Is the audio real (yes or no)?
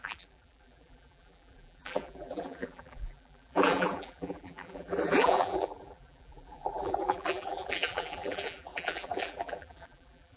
no